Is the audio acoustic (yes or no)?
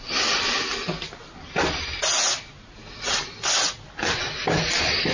yes